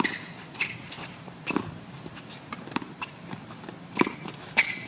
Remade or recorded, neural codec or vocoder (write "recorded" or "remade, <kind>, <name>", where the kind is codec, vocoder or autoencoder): remade, vocoder, BigVGAN v2